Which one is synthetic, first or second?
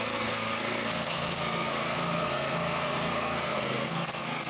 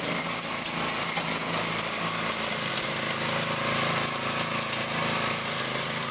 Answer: first